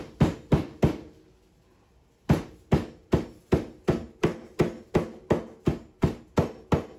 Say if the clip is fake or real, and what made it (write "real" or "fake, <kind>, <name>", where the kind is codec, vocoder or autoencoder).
real